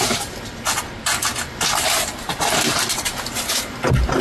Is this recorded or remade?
recorded